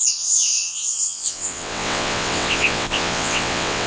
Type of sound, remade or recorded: remade